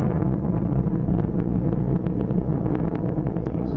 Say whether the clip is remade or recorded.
remade